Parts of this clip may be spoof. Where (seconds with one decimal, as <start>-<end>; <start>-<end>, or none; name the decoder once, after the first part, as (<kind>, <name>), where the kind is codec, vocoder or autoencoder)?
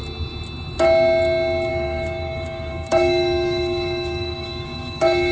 1.7-5.3 (codec, DAC)